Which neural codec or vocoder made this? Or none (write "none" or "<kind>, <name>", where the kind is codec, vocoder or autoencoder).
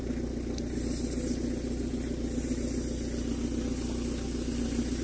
none